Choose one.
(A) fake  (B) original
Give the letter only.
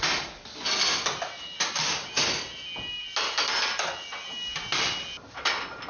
B